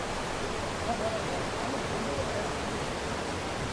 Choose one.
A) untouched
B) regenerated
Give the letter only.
A